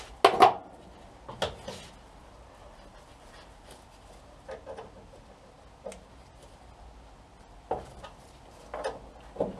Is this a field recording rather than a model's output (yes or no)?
yes